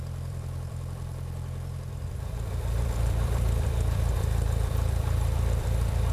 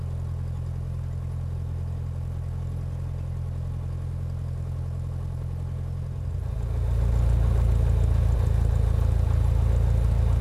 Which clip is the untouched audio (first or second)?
second